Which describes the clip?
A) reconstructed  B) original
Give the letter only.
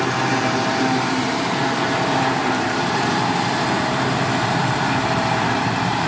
A